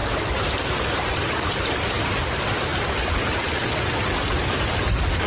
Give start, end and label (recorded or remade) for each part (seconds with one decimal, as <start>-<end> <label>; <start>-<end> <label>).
0.0-5.3 recorded

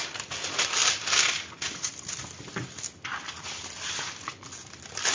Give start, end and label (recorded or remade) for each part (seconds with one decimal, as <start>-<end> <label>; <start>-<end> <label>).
0.0-5.1 recorded

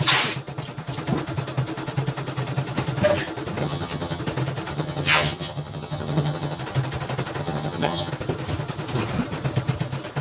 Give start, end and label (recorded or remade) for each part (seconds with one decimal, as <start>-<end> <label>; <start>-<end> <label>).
0.0-3.6 recorded; 3.6-4.2 remade; 4.2-4.7 recorded; 4.7-6.6 remade; 6.6-7.4 recorded; 7.4-8.1 remade; 8.1-10.2 recorded